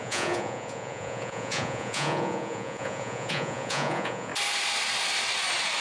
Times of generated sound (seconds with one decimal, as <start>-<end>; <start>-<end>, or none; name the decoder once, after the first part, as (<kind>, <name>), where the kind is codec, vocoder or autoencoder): 0.0-4.3 (vocoder, Vocos)